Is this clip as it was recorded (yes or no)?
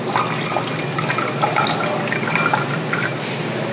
yes